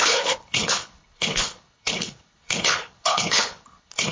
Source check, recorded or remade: remade